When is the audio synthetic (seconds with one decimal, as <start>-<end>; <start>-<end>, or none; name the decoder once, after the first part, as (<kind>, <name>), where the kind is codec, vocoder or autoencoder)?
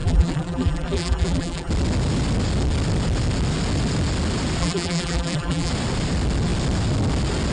0.0-1.7 (vocoder, BigVGAN v2); 4.6-5.7